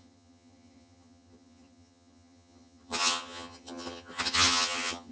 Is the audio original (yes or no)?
no